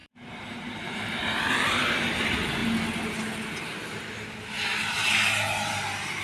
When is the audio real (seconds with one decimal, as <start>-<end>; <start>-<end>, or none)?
2.6-5.1